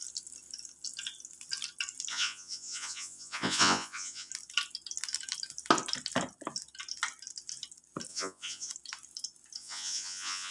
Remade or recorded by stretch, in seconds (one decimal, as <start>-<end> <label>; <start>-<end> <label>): 0.0-2.1 recorded; 2.1-4.3 remade; 4.3-8.1 recorded; 8.1-8.7 remade; 8.7-9.6 recorded; 9.6-10.5 remade